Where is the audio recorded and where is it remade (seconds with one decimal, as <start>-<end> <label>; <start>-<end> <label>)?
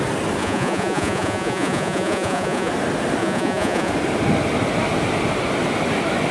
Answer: 0.0-0.4 recorded; 0.4-2.7 remade; 2.7-3.2 recorded; 3.2-3.9 remade; 3.9-6.3 recorded